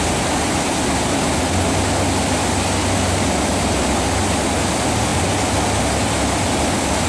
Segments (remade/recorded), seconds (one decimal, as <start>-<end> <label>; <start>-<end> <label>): 0.0-7.1 recorded